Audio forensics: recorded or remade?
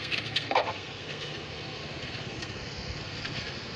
remade